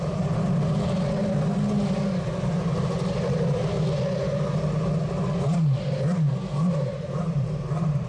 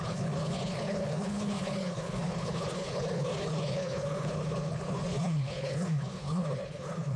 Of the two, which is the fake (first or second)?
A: second